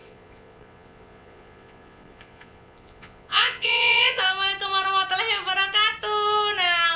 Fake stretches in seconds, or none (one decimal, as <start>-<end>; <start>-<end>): 0.0-4.2